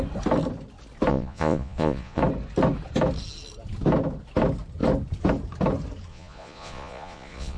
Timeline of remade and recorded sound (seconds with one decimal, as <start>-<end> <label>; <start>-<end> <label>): 0.0-1.1 recorded; 1.1-2.2 remade; 2.2-6.1 recorded; 6.1-7.6 remade